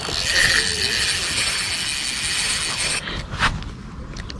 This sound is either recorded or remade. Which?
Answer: recorded